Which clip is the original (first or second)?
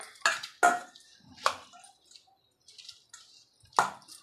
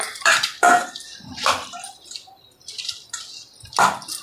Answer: first